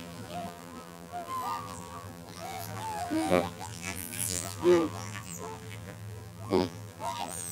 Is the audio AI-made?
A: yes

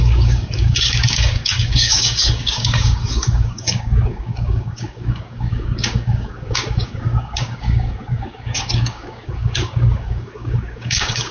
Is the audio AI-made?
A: yes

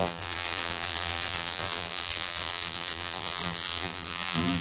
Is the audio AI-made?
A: yes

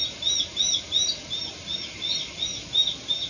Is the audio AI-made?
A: no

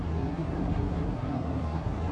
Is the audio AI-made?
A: yes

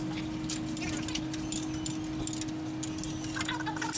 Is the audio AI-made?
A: no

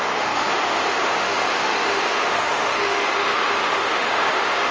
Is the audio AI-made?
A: yes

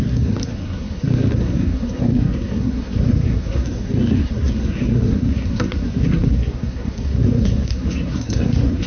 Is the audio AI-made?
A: yes